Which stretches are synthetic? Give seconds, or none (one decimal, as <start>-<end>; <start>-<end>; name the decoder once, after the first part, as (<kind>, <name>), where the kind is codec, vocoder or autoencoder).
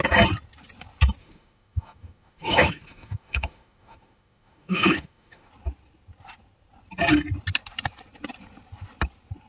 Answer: 1.2-5.5 (autoencoder, DAC-VAE)